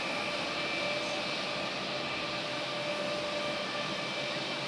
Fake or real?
real